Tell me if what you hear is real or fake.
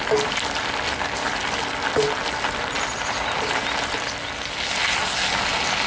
real